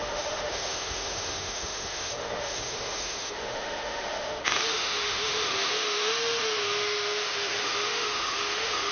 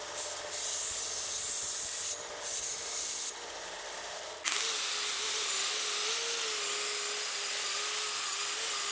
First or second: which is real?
second